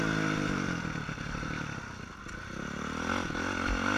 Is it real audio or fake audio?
real